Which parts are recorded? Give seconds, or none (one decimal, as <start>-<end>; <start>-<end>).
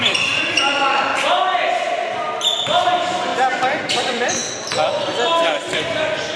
1.1-2.6; 4.4-5.5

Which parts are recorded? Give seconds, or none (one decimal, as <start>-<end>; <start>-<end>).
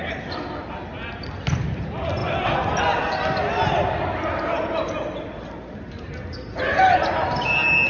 0.0-7.9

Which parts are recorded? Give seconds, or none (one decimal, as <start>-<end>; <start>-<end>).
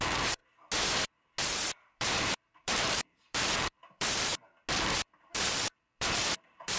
0.4-1.8; 4.3-5.2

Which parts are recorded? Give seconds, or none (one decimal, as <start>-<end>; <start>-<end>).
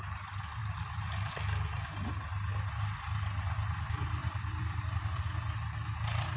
0.0-0.6; 1.3-4.2; 5.2-6.4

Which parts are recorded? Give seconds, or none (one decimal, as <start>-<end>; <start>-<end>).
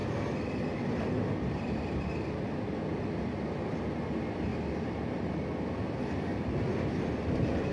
3.7-4.5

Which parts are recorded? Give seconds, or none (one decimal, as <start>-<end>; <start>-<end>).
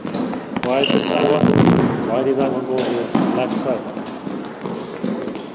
0.0-0.9; 1.8-5.5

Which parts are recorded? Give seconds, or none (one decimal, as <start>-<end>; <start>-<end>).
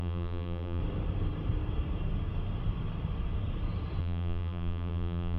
0.8-4.0